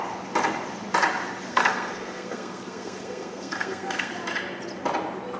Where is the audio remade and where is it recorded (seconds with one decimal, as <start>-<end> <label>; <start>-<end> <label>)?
0.0-1.5 recorded; 1.5-4.1 remade; 4.1-5.4 recorded